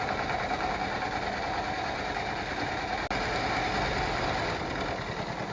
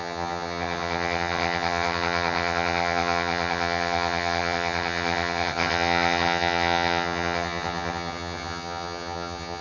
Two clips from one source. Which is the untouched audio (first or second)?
first